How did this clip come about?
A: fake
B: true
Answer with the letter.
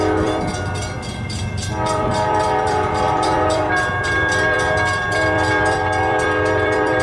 A